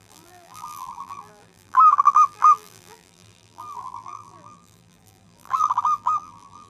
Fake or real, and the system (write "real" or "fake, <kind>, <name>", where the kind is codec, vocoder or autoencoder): fake, vocoder, BigVGAN v2